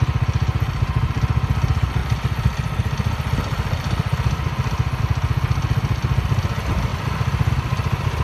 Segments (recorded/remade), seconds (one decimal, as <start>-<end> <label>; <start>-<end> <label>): 0.0-8.2 recorded